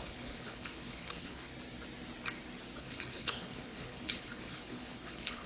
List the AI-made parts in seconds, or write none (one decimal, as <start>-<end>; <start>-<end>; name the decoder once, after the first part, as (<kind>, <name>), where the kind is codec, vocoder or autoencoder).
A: 0.0-1.5 (codec, HILCodec); 2.8-5.5